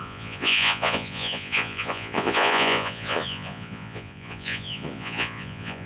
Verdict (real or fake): fake